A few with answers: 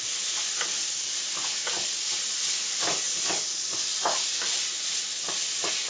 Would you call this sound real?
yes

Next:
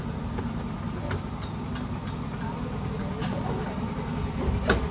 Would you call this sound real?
yes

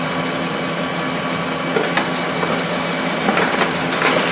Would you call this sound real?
yes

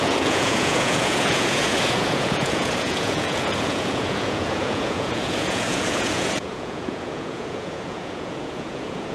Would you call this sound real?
no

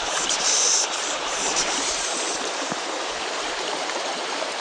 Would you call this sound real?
no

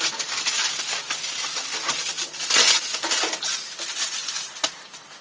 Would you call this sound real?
yes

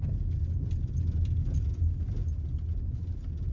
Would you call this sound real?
yes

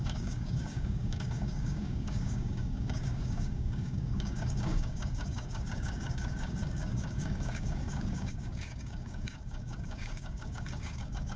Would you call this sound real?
no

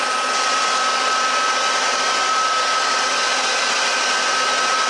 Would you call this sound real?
yes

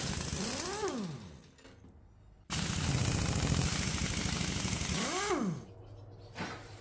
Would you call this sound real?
yes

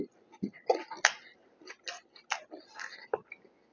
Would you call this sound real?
yes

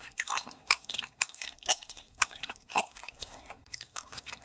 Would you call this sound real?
no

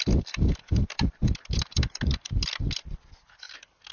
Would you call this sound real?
yes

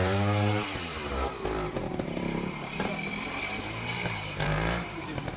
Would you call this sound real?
no